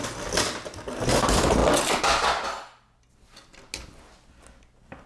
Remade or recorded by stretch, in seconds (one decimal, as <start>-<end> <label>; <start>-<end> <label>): 0.0-5.1 recorded